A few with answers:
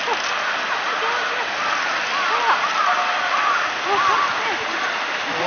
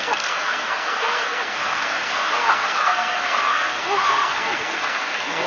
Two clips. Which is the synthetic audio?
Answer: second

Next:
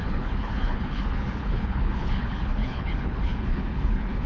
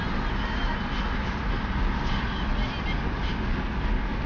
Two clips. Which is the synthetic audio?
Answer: first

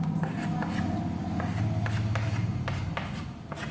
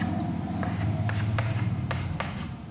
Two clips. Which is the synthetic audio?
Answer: second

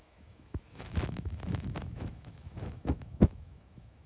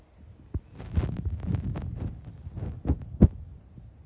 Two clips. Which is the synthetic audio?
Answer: first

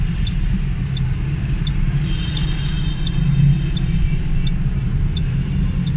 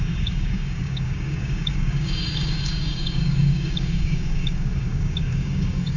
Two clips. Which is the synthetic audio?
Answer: second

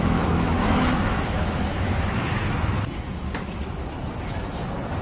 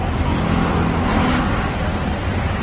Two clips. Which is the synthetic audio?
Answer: first